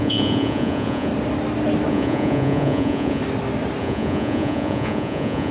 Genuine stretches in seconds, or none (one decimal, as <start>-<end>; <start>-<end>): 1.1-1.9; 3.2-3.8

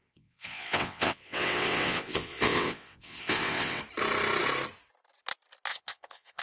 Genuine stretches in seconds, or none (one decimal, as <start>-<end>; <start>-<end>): 3.8-5.7

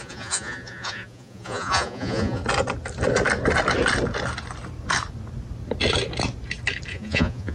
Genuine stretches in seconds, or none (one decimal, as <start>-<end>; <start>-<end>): 2.4-6.9

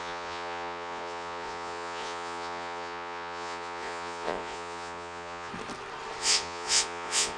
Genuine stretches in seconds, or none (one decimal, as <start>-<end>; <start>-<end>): 5.5-6.2